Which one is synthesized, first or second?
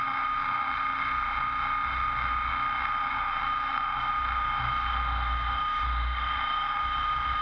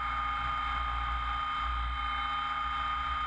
first